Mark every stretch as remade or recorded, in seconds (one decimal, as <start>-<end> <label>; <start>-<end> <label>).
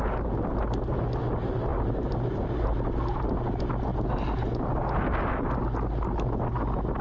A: 0.0-1.7 recorded; 1.7-3.0 remade; 3.0-7.0 recorded